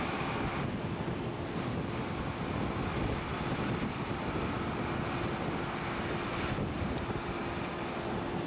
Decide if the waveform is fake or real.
real